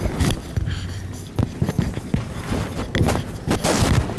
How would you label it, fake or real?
real